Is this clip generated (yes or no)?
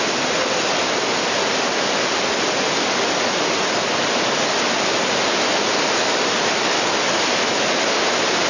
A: no